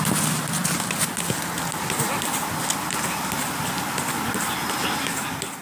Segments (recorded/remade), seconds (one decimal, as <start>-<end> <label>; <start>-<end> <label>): 0.0-5.6 recorded